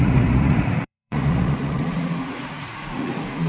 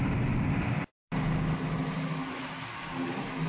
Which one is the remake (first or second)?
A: first